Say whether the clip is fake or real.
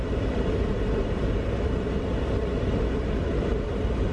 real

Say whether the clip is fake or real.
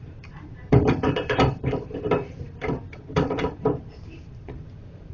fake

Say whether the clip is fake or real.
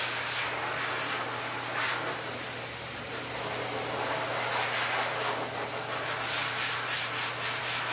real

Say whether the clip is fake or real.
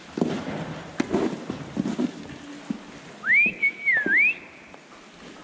real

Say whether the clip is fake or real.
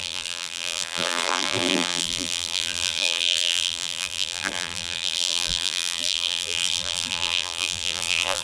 fake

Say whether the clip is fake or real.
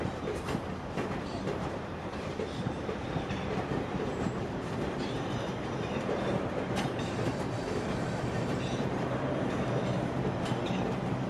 fake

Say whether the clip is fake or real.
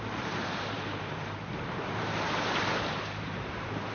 fake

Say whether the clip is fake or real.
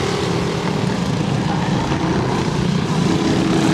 real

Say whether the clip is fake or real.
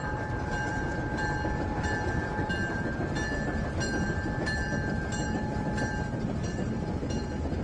fake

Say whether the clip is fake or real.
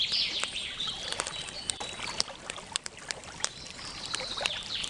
fake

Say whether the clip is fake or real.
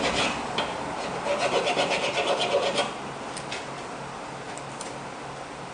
real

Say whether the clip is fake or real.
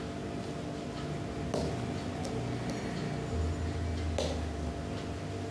real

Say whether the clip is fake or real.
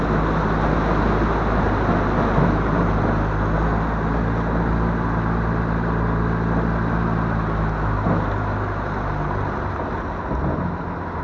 real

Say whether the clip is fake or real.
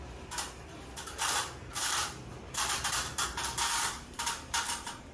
fake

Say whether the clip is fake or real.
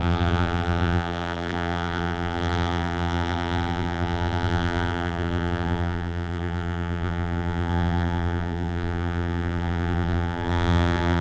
fake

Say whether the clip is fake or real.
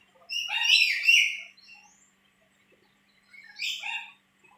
fake